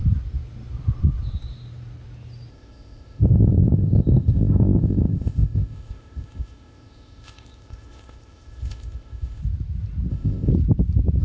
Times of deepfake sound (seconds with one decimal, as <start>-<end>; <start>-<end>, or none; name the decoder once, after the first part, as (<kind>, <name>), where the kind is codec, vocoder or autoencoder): 2.5-9.4 (codec, ZipCodec); 10.1-10.5

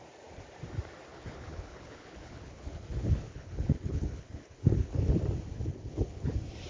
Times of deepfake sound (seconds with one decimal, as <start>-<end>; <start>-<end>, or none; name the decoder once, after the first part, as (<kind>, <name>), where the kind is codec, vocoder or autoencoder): 1.1-5.1 (codec, HILCodec); 5.5-6.3

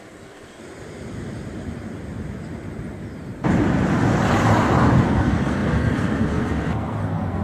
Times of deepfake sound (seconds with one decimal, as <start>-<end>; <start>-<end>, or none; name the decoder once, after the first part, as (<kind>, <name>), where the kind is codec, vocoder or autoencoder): 0.0-0.6 (codec, SNAC); 5.0-7.4

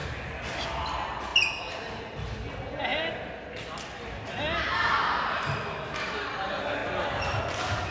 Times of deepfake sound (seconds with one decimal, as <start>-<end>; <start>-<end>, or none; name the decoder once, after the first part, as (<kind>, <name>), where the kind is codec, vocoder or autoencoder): 0.0-0.7 (vocoder, BigVGAN v2)

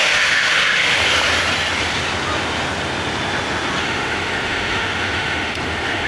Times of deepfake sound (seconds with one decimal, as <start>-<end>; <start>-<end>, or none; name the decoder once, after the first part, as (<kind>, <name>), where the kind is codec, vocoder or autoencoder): 0.0-1.0 (autoencoder, DAC-VAE); 3.8-6.1

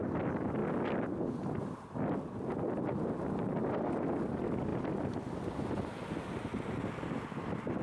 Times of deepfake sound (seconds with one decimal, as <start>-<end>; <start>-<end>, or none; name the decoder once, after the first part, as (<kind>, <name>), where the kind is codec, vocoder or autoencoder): none

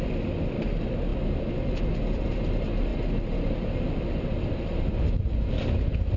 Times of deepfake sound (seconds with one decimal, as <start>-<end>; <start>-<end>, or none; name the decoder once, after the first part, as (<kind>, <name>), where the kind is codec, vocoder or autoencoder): 1.1-2.4 (vocoder, BigVGAN v2); 2.9-4.8

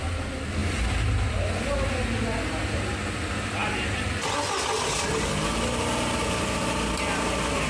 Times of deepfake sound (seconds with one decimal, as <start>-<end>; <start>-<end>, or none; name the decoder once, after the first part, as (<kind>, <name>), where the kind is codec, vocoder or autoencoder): 3.6-4.1 (vocoder, BigVGAN v2)